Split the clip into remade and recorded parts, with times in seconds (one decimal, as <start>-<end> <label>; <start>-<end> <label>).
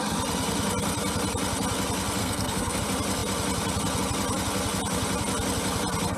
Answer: 0.0-2.2 recorded; 2.2-2.8 remade; 2.8-6.2 recorded